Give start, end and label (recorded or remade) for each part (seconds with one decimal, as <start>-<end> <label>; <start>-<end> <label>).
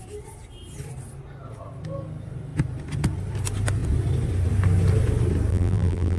0.0-5.5 recorded; 5.5-6.2 remade